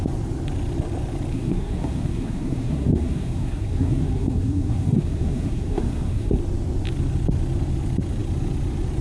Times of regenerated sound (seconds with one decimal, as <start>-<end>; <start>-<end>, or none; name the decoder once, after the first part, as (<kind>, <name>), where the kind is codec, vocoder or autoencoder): 1.3-6.4 (codec, SNAC)